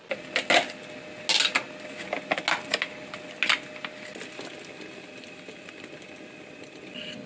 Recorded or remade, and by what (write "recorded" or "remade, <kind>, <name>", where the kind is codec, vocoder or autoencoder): recorded